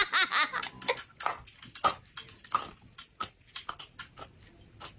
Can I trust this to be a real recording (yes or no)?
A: yes